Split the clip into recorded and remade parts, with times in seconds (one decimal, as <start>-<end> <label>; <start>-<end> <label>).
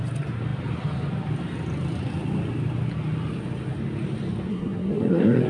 0.0-4.5 recorded; 4.5-5.5 remade